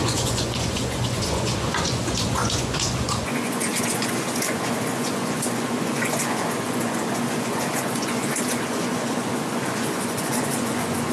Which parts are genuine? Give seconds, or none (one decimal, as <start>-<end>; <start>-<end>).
none